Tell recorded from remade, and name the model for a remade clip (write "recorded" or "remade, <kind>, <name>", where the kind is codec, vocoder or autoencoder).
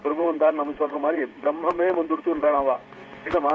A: remade, vocoder, Vocos